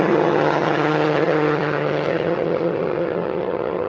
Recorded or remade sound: remade